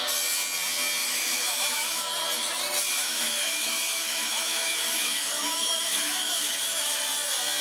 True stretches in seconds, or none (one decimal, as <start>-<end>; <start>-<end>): 0.0-1.0; 2.0-3.0; 7.0-7.6